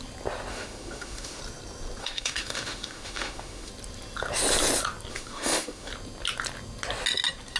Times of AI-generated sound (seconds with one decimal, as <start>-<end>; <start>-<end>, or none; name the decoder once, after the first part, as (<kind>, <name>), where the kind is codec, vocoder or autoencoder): 0.5-1.4 (autoencoder, DAC-VAE); 2.0-3.7; 5.1-5.9